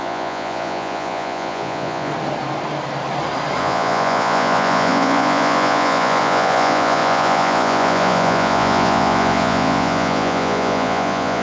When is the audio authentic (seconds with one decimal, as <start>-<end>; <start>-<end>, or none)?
2.1-3.6